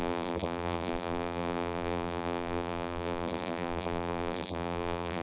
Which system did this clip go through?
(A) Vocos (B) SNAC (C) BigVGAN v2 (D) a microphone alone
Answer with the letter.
C